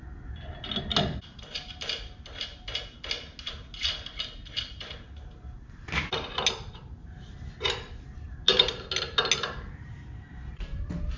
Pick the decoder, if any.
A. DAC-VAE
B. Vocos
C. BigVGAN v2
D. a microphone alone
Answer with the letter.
D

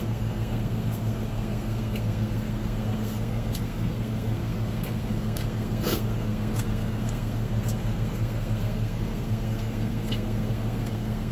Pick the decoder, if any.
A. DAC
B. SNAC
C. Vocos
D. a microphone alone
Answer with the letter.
B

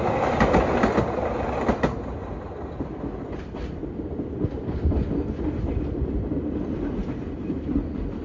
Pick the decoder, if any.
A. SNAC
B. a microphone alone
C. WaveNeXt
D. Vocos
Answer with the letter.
B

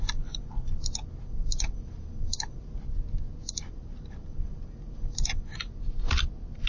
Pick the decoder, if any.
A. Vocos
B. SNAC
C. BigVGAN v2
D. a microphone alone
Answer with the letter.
D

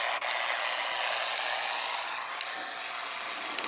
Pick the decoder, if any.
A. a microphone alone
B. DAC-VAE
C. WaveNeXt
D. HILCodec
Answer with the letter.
A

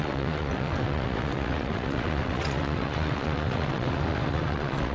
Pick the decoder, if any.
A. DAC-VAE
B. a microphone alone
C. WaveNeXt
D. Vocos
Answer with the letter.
C